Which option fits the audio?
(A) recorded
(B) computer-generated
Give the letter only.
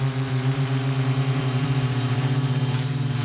B